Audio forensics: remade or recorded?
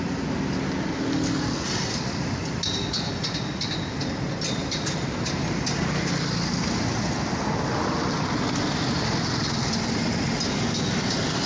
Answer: recorded